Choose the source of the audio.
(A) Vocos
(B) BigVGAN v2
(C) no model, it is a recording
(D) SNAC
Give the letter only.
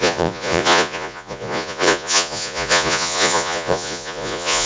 A